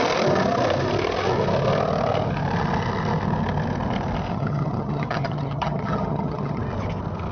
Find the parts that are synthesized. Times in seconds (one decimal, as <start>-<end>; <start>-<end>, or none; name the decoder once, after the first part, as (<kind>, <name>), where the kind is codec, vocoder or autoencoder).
4.3-6.6 (vocoder, HiFi-GAN)